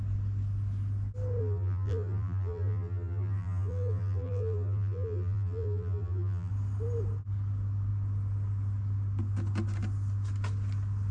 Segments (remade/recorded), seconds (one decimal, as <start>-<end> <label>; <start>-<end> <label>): 0.0-1.4 recorded; 1.4-6.5 remade; 6.5-11.1 recorded